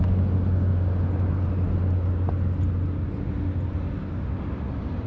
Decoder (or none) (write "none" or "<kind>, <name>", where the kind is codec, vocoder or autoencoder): none